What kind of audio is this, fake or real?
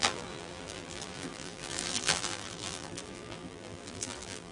fake